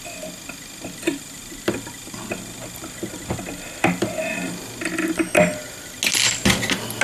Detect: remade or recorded recorded